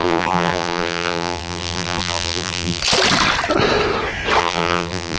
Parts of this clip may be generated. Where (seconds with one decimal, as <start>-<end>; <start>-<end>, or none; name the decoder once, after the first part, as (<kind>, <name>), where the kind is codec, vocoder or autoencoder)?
0.0-2.8 (vocoder, BigVGAN v2); 4.4-5.2